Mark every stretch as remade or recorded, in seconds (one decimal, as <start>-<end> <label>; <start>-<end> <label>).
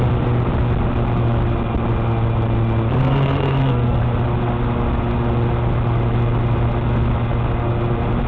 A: 0.0-3.0 recorded; 3.0-4.0 remade; 4.0-8.3 recorded